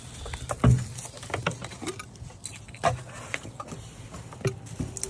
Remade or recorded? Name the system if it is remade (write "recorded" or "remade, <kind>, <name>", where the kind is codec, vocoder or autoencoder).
recorded